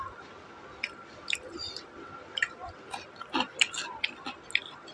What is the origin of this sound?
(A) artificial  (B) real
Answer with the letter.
B